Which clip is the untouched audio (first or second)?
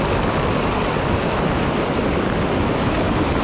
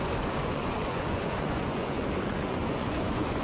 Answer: first